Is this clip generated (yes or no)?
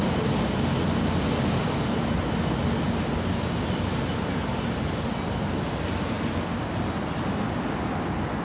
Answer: no